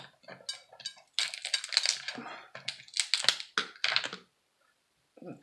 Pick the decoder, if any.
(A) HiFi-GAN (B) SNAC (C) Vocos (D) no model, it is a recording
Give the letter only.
D